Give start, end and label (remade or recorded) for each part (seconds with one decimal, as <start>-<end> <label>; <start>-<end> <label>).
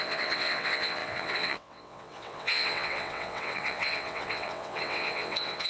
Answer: 0.0-5.7 remade